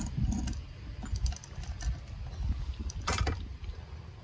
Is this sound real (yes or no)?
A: yes